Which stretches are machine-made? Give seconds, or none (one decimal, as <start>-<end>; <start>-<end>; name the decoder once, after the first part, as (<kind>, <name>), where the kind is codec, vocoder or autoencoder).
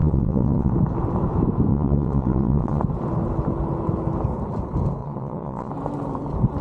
0.0-0.7 (vocoder, Vocos); 1.7-2.8; 5.0-5.7